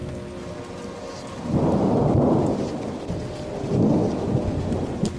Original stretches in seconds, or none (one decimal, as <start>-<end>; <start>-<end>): 0.0-5.2